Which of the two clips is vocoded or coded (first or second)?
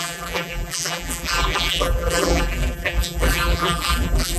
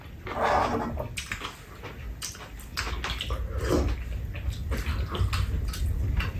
first